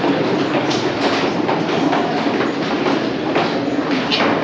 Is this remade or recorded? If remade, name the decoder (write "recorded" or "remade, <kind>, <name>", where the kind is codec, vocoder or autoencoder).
recorded